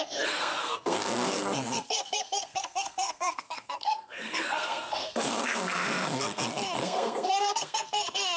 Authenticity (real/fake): fake